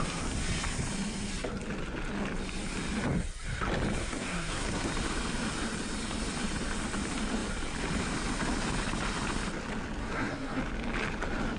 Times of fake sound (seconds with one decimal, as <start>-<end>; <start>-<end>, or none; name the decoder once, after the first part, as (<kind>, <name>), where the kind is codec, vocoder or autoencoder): 4.0-4.9 (codec, SNAC); 10.0-10.6